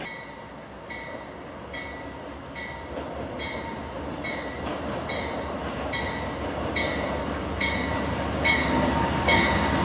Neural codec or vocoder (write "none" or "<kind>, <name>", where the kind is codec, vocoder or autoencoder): none